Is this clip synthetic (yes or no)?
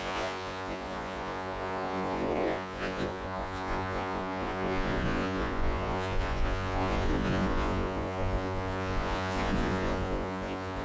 yes